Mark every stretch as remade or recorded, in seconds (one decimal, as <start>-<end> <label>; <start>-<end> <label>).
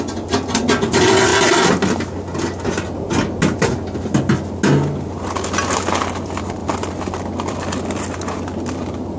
0.0-9.2 recorded